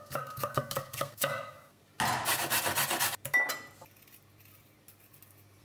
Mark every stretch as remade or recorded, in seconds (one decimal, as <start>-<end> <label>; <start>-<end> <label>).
0.0-1.8 remade; 1.8-5.6 recorded